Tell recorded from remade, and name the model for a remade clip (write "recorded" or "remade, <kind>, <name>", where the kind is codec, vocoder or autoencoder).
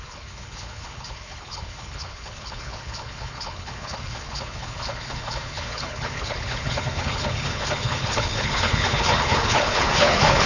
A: remade, codec, HILCodec